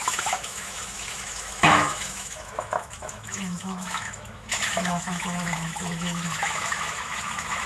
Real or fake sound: fake